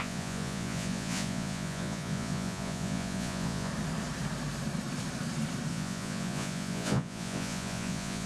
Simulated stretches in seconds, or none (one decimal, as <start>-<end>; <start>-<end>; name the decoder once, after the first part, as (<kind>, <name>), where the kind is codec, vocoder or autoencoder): 0.0-3.7 (vocoder, Vocos); 5.7-8.3